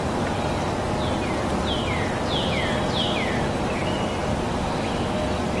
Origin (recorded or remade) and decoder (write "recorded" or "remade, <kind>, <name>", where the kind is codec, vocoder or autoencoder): recorded